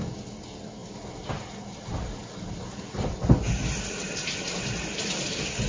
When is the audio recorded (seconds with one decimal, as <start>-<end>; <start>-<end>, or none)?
0.0-5.7

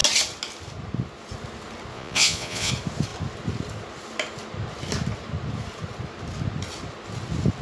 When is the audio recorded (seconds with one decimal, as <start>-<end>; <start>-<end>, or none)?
0.0-1.9; 2.7-7.6

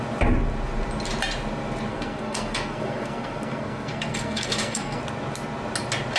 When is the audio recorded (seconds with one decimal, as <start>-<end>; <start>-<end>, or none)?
0.0-1.9; 5.0-6.2

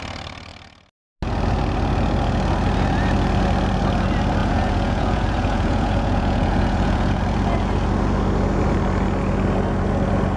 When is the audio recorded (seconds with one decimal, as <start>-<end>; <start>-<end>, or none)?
0.0-4.4; 7.2-10.4

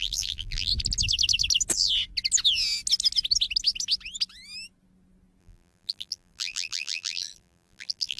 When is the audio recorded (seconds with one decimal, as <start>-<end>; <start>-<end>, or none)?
0.7-5.4

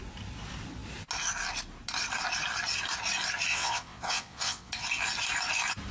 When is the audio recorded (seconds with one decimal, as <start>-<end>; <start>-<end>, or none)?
0.0-3.5; 4.7-5.9

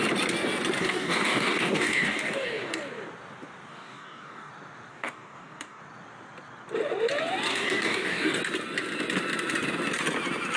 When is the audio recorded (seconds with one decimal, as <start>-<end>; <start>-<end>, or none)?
0.0-0.8; 2.8-3.7; 4.5-4.9; 5.8-7.5; 8.4-10.6

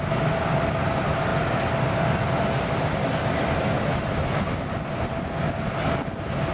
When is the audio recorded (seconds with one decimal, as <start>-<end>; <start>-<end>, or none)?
0.0-6.5